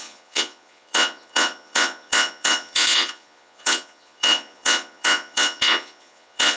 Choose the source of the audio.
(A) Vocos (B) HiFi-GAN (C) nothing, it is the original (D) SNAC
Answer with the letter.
A